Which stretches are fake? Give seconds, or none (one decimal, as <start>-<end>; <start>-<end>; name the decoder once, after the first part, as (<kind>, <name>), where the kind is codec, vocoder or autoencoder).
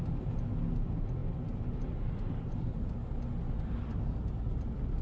none